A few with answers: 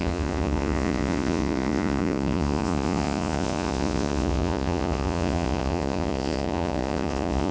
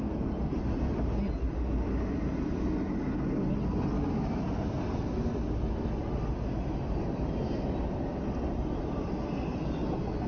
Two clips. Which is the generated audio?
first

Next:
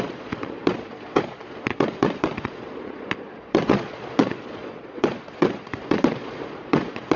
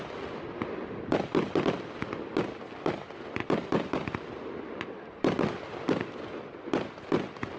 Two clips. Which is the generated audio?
first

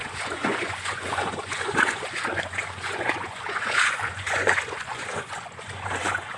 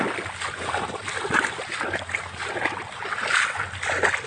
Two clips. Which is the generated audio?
first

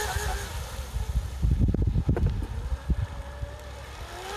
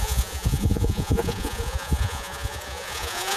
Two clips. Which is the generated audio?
second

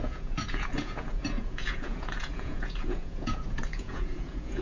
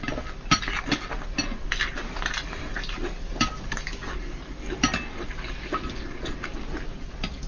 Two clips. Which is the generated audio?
first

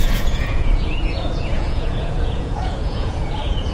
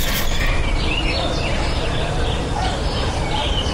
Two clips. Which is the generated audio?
first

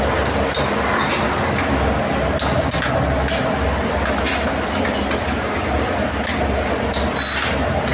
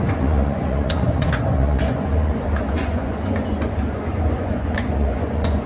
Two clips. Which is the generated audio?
second